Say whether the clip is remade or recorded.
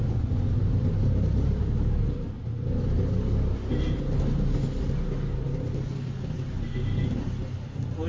recorded